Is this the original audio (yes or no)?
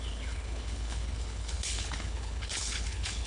no